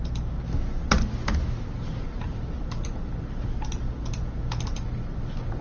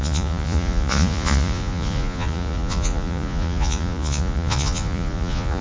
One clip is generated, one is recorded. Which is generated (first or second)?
second